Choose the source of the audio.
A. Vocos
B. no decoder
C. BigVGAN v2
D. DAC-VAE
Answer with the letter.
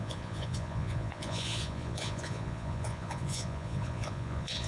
A